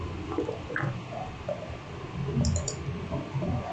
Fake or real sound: real